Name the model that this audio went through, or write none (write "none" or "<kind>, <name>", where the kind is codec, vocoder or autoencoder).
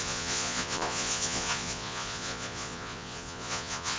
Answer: vocoder, Vocos